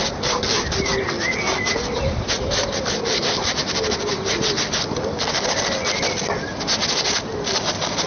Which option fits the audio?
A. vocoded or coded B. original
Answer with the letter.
B